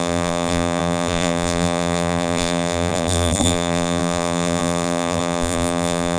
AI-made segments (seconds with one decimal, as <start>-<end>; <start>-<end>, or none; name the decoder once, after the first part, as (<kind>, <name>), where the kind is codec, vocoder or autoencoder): 0.0-6.2 (vocoder, BigVGAN v2)